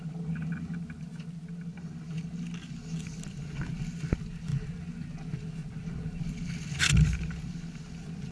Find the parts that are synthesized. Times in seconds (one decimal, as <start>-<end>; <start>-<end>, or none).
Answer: none